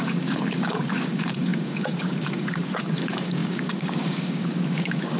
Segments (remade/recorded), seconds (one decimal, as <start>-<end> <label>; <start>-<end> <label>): 0.0-5.2 remade